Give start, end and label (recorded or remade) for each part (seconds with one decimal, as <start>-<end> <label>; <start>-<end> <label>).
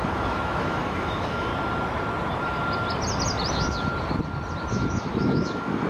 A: 0.0-1.5 remade; 1.5-3.5 recorded; 3.5-3.9 remade; 3.9-4.7 recorded; 4.7-5.9 remade